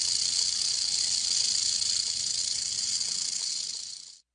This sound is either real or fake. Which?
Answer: real